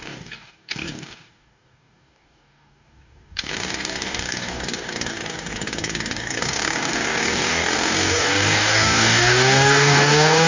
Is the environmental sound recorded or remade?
remade